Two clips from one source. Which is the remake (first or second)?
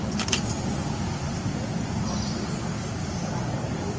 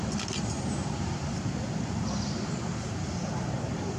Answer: second